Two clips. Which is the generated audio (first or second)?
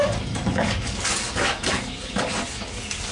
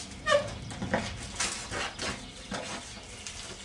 first